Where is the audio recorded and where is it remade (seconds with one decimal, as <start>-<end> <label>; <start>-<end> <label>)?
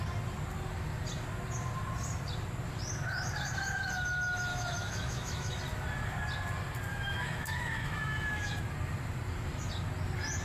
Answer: 0.0-4.5 recorded; 4.5-5.6 remade; 5.6-6.9 recorded; 6.9-8.6 remade; 8.6-10.4 recorded